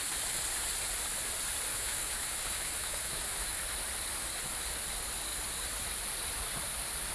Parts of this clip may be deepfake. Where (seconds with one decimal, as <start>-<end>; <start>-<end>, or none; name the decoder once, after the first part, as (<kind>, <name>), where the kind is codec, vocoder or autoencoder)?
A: 1.7-3.6 (autoencoder, DAC-VAE)